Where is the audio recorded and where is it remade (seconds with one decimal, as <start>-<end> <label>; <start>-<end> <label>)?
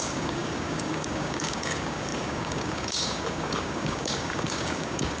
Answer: 0.0-5.2 remade